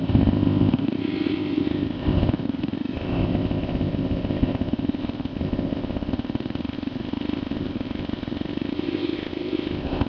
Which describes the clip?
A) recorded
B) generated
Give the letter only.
B